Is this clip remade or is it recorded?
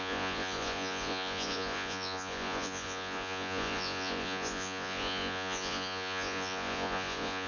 remade